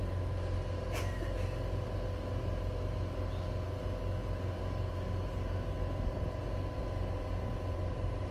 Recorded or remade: recorded